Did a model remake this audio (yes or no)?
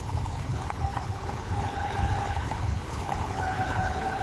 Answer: yes